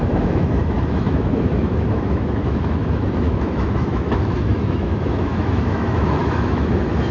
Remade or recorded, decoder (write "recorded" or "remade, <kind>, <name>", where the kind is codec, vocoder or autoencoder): remade, autoencoder, DAC-VAE